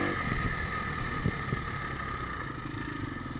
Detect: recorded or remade recorded